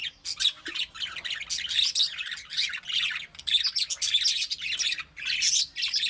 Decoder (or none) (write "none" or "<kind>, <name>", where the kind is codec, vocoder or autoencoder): none